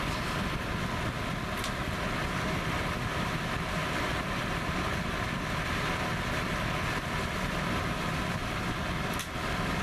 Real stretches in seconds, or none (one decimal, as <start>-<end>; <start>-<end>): 0.0-9.8